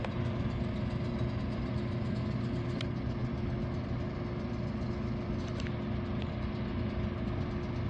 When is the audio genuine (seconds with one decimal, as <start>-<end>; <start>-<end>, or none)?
0.0-7.9